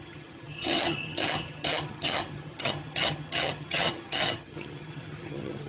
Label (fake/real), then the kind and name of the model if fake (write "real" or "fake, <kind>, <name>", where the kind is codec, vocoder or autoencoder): fake, vocoder, HiFi-GAN